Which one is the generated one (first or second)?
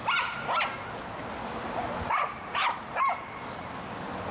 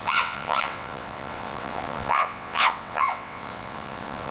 second